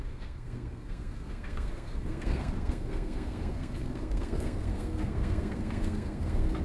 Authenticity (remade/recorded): remade